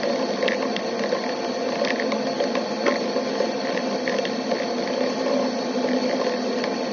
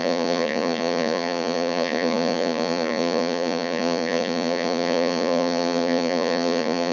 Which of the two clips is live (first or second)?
first